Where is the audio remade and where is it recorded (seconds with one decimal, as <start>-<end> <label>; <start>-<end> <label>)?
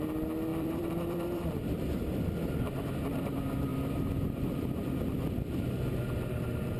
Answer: 0.0-0.5 recorded; 0.5-2.9 remade; 2.9-3.7 recorded; 3.7-5.5 remade; 5.5-6.8 recorded